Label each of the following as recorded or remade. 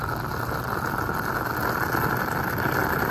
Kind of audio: recorded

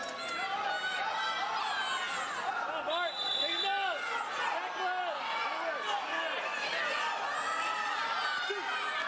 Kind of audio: recorded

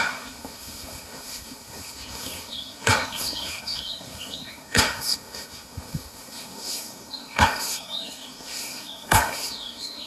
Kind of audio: remade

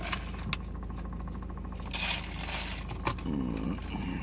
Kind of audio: recorded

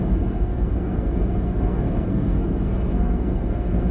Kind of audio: remade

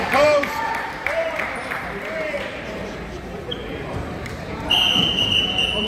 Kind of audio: remade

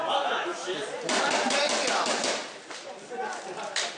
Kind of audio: remade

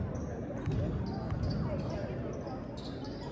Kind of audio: recorded